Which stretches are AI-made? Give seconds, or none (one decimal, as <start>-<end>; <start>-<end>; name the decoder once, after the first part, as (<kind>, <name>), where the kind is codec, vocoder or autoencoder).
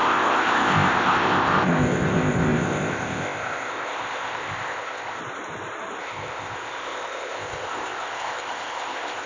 0.0-5.2 (codec, ZipCodec); 6.0-9.3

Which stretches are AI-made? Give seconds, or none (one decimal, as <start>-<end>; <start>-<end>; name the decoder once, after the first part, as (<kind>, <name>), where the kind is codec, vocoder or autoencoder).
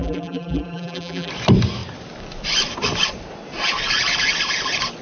0.0-1.3 (vocoder, BigVGAN v2)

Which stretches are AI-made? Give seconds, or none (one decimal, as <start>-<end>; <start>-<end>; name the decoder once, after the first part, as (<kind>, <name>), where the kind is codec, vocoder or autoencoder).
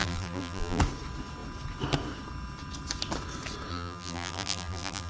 0.0-0.8 (vocoder, BigVGAN v2); 3.7-5.1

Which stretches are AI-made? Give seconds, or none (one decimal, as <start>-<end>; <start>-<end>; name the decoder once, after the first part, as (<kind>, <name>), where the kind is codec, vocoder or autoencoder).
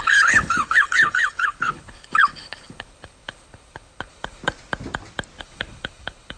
0.0-4.4 (codec, HILCodec); 5.4-6.4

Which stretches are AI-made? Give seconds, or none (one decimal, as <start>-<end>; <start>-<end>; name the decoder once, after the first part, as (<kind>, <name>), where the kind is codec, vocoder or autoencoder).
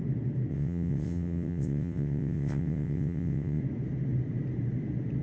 0.5-3.6 (vocoder, WaveNeXt)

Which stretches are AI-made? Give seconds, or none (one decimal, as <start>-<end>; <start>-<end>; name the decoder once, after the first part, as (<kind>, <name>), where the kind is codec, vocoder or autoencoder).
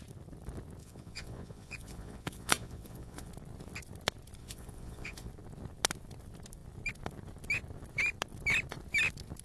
0.8-3.3 (vocoder, Vocos); 4.4-5.3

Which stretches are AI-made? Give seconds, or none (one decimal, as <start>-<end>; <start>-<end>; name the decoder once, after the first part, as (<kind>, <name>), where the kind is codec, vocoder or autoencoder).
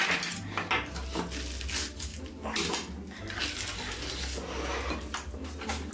none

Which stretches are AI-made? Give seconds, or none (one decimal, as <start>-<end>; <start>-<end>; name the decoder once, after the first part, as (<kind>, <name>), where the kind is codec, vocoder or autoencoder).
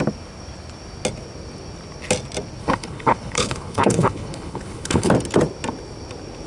2.6-5.1 (codec, HILCodec)